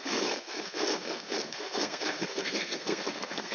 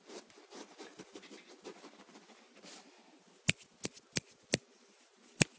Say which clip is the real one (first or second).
second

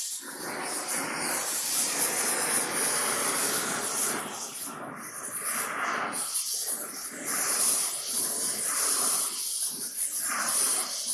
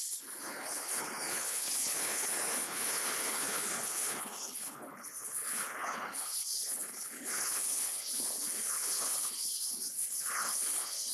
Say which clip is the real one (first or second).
first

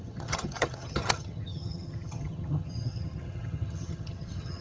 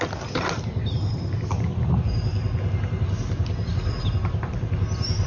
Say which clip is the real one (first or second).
second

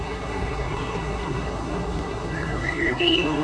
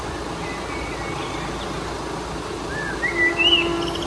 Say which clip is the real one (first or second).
second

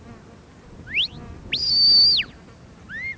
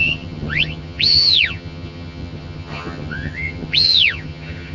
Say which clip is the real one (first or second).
first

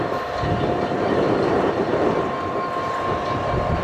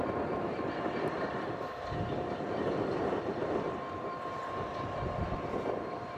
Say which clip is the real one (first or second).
first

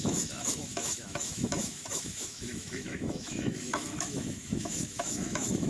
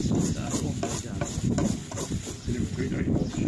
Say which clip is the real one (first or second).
second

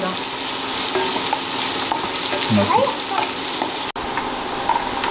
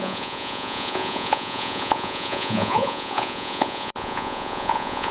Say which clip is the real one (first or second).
first